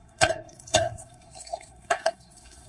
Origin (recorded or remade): remade